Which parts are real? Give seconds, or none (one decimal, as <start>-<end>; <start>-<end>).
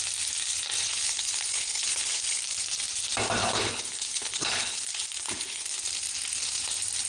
0.0-0.8; 2.4-3.4; 5.6-7.1